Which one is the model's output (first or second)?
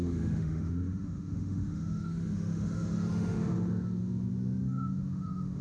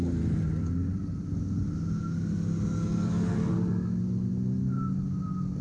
first